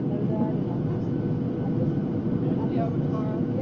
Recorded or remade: recorded